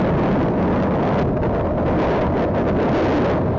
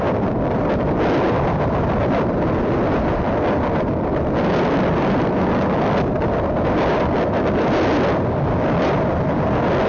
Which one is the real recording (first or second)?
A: first